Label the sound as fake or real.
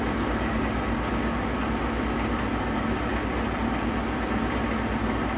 real